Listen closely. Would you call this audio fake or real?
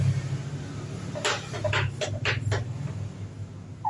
real